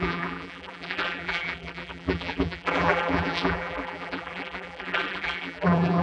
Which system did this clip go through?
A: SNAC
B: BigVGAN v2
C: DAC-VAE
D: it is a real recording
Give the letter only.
B